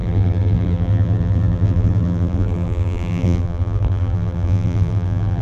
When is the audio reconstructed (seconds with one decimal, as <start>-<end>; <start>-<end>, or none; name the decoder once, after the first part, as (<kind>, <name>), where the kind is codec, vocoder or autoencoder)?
0.0-5.4 (vocoder, BigVGAN v2)